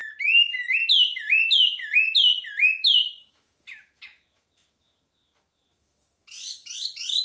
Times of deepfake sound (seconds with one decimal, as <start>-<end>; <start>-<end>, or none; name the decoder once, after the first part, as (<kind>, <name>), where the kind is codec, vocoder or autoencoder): 3.2-7.2 (autoencoder, DAC-VAE)